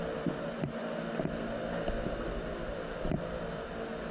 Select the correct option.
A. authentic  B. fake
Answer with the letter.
A